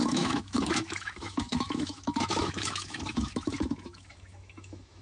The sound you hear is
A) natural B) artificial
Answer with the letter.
B